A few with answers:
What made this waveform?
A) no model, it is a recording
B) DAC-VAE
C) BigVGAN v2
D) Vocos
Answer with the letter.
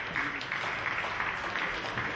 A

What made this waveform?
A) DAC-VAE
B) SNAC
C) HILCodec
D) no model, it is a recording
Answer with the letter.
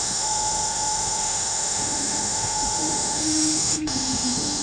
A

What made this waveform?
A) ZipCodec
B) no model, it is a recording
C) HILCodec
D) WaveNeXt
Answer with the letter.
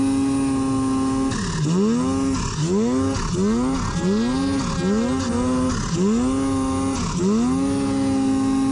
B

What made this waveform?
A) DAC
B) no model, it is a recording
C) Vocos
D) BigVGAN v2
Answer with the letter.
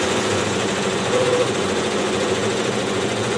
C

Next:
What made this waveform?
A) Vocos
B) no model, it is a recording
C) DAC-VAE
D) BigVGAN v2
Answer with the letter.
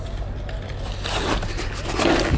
B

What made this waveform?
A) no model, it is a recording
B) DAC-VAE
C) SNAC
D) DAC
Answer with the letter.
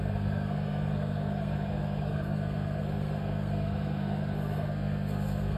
C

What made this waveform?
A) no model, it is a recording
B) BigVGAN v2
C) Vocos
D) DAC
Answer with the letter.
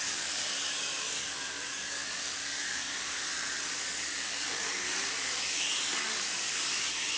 D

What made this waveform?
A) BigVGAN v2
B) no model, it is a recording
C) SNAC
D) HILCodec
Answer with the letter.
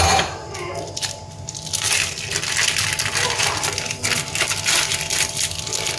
B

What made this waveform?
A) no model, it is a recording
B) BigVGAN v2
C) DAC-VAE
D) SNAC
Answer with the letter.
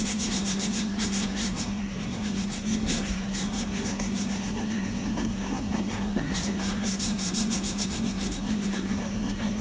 D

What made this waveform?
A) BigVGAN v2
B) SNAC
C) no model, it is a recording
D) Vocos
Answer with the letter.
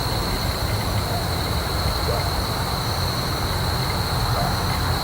C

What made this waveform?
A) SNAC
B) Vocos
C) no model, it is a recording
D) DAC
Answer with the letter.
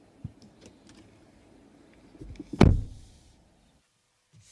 C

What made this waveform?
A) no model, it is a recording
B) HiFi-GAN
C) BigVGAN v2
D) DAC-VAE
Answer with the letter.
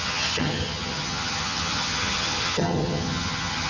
B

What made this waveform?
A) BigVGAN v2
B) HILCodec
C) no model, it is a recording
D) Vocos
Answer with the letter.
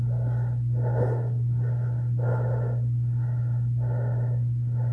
C